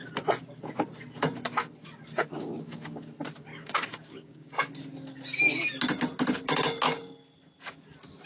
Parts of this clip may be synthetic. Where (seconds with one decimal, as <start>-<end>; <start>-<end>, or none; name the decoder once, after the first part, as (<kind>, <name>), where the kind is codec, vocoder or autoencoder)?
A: 2.2-3.0 (codec, DAC); 3.5-4.7